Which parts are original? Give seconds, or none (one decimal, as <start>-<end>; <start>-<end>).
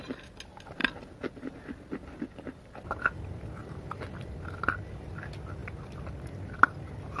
0.0-3.6; 4.3-7.2